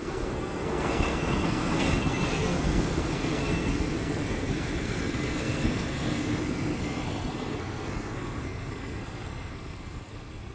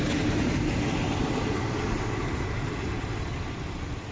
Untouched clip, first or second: second